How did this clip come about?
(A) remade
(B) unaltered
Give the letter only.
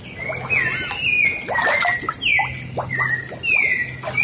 B